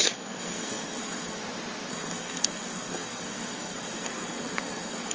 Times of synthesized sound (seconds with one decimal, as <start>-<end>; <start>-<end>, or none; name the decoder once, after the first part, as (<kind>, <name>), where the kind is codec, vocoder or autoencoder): 0.0-1.4 (codec, SNAC); 1.9-5.1